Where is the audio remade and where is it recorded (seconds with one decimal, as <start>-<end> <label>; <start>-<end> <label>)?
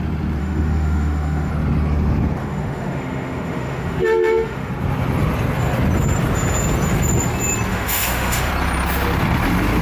0.0-0.4 recorded; 0.4-1.5 remade; 1.5-2.4 recorded; 2.4-4.7 remade; 4.7-7.7 recorded; 7.7-8.5 remade; 8.5-9.8 recorded